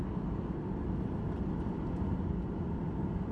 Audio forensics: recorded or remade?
recorded